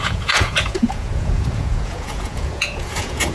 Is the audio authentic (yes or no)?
no